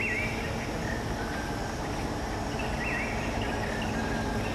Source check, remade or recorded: recorded